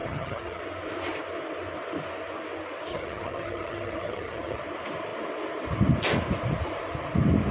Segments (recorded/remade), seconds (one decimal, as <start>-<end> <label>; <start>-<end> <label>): 0.0-0.6 remade; 0.6-2.9 recorded; 2.9-4.6 remade; 4.6-7.5 recorded